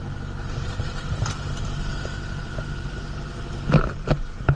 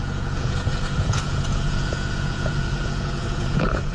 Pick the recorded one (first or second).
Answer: first